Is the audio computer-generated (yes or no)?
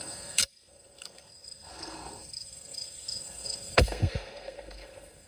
yes